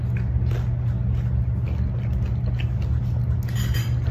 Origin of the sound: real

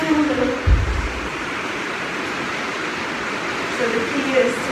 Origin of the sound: real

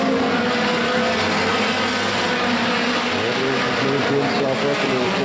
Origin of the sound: real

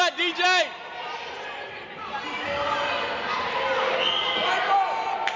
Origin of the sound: real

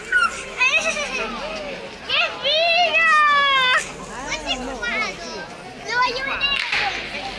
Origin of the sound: real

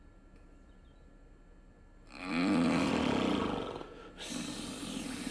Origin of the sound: real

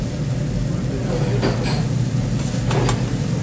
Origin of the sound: real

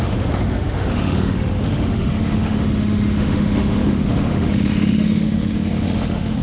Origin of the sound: fake